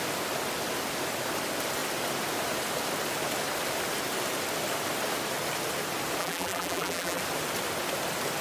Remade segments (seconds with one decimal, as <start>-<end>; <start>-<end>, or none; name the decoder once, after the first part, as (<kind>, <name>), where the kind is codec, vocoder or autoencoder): 6.2-7.2 (vocoder, BigVGAN v2)